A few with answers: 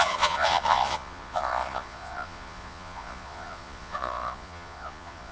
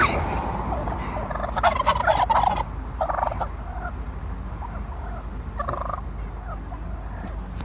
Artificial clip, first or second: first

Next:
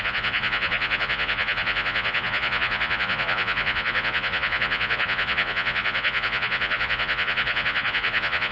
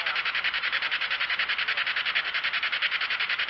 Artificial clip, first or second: first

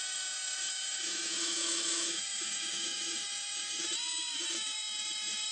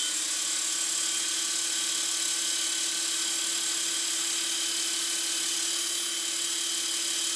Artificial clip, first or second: first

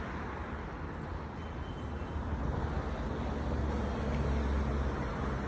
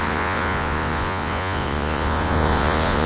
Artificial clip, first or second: second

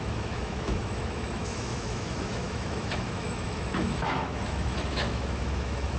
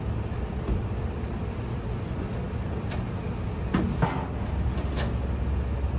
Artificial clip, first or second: first